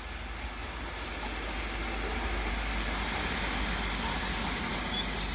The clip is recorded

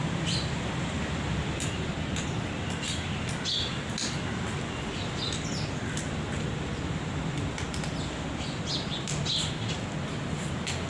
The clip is recorded